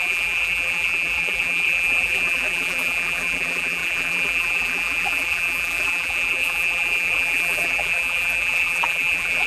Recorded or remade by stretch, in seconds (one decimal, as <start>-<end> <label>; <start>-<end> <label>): 0.0-9.5 remade